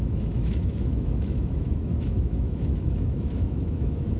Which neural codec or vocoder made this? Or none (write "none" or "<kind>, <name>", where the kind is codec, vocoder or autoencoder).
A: autoencoder, DAC-VAE